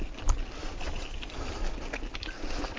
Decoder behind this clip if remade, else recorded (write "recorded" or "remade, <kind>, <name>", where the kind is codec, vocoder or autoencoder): recorded